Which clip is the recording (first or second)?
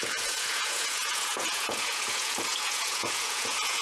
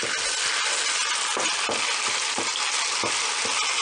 second